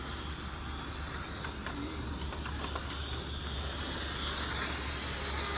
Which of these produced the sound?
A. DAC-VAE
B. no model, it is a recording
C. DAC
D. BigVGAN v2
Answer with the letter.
B